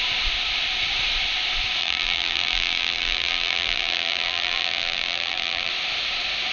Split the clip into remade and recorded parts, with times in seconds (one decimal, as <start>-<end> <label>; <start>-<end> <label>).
0.0-1.8 recorded; 1.8-5.7 remade; 5.7-6.5 recorded